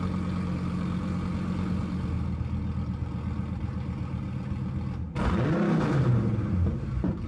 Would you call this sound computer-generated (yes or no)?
no